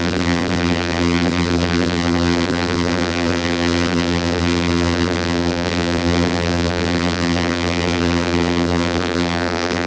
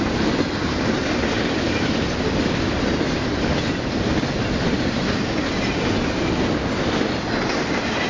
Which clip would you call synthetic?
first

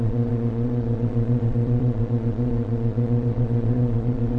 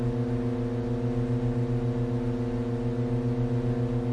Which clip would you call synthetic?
first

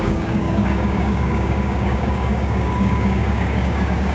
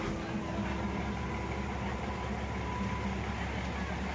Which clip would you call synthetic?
first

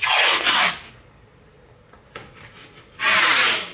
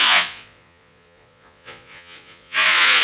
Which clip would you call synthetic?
second